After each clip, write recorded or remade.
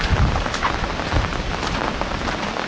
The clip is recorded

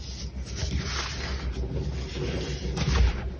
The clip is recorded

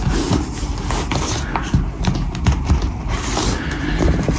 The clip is recorded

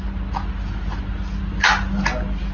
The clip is recorded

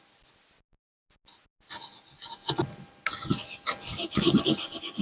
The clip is recorded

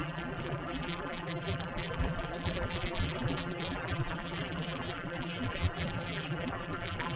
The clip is remade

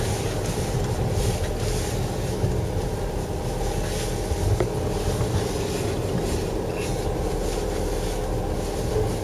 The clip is recorded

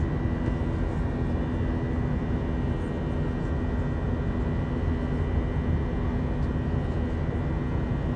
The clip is recorded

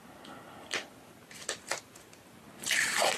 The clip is recorded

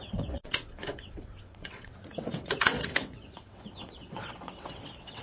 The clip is remade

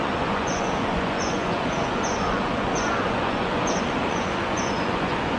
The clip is remade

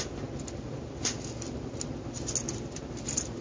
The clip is recorded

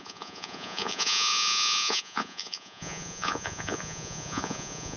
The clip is remade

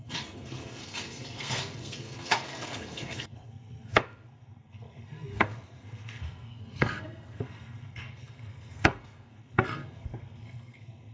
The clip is remade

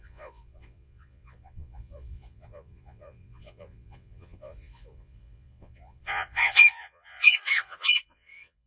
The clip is remade